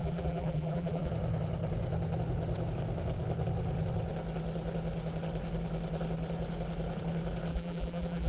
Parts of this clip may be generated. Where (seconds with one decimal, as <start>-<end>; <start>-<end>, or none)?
0.0-1.1; 7.5-8.3